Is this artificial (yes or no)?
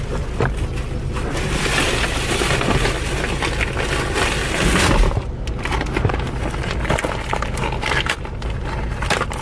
no